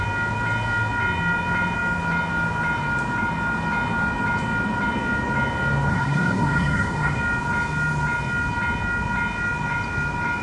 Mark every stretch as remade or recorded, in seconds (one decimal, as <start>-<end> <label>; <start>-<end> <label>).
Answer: 0.0-5.9 recorded; 5.9-7.2 remade; 7.2-10.4 recorded